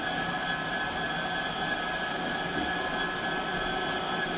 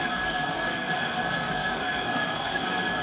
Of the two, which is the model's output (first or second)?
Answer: second